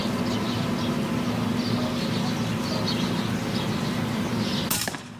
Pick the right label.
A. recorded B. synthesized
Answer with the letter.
A